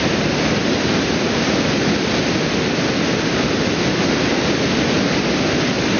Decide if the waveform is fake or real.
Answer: real